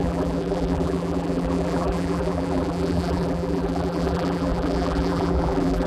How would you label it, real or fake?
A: fake